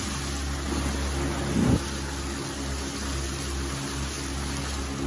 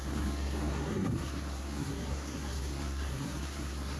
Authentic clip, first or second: first